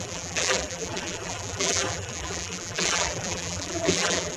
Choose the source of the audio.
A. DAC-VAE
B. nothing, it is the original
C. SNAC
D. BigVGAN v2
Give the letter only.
D